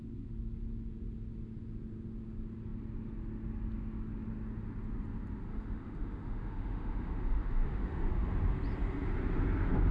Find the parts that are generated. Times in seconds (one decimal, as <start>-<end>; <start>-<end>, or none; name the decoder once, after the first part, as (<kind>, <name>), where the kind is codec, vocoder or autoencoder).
5.5-8.1 (autoencoder, DAC-VAE)